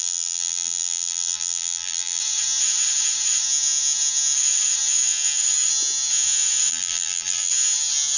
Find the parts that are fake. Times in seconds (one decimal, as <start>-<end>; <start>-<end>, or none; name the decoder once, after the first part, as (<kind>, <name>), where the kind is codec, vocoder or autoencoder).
0.0-2.2 (vocoder, BigVGAN v2); 6.7-7.5